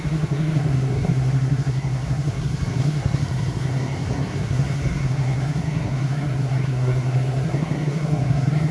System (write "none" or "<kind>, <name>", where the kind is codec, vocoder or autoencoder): codec, SNAC